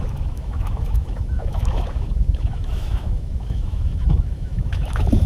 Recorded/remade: remade